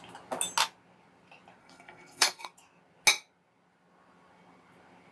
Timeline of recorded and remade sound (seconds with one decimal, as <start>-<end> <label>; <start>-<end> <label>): 0.0-1.6 recorded; 1.6-2.5 remade; 2.5-5.1 recorded